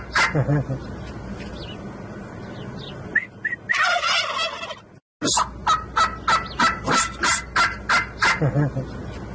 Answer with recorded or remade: recorded